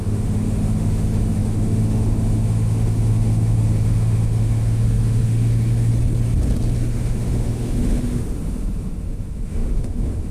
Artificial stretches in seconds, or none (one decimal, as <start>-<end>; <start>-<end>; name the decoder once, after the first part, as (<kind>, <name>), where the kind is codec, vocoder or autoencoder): 0.0-5.9 (autoencoder, DAC-VAE); 6.9-10.3